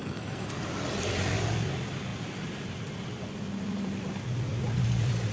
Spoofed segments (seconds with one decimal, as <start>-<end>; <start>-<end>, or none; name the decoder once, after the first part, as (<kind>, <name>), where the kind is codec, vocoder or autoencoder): 0.0-0.5 (codec, SNAC)